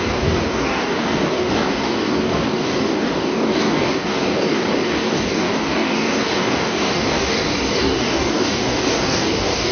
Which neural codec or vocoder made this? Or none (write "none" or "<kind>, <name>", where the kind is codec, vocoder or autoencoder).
codec, DAC